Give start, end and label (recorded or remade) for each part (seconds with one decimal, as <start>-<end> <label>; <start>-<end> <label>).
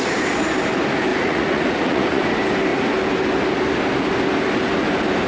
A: 0.0-1.1 recorded; 1.1-2.2 remade; 2.2-5.3 recorded